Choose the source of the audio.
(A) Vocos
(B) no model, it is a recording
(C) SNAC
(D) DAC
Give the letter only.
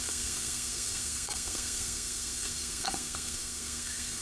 C